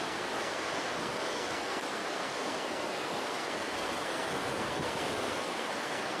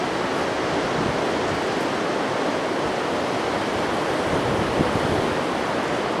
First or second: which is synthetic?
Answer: first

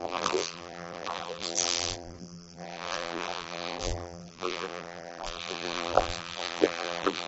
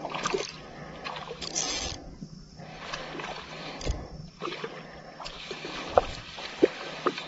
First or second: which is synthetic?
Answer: first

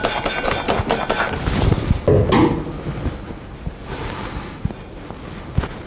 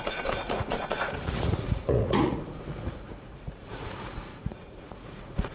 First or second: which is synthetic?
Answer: second